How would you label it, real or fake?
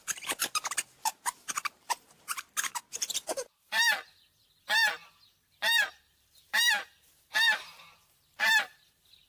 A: fake